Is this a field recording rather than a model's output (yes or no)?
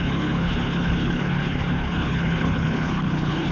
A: no